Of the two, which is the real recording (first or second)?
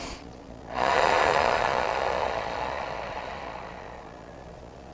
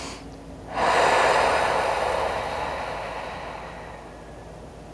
second